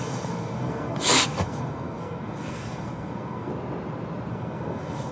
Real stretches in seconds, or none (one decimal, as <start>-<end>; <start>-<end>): 3.5-4.3